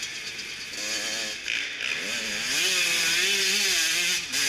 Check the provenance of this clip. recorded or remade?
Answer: recorded